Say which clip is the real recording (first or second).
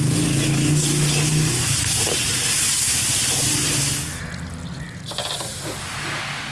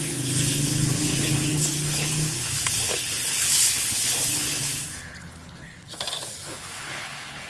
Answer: first